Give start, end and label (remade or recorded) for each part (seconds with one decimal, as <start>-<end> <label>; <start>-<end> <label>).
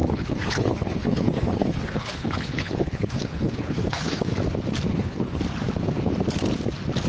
0.0-4.3 remade; 4.3-4.9 recorded; 4.9-5.4 remade; 5.4-7.1 recorded